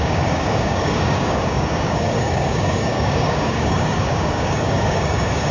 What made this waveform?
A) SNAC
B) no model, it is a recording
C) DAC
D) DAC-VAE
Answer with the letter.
C